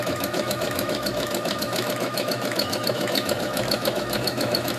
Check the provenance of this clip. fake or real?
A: fake